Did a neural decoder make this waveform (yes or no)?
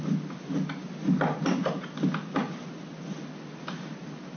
no